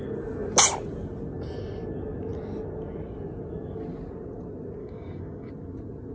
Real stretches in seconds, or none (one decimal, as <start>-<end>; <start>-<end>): 0.0-4.8; 5.5-6.1